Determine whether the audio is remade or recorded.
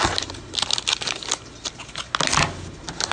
recorded